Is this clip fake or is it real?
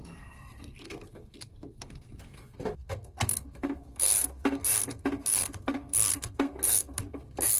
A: fake